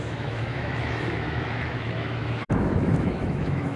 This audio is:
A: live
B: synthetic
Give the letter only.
B